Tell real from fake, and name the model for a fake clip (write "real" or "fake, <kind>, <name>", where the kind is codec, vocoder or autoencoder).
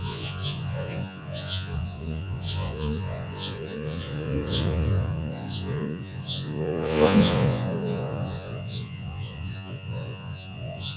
fake, vocoder, Vocos